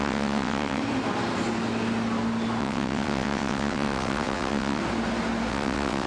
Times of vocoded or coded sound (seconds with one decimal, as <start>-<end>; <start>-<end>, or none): 0.0-0.8; 2.6-4.8; 5.5-6.1